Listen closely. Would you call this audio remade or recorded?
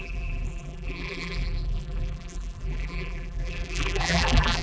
remade